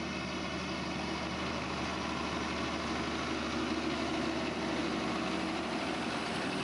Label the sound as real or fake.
real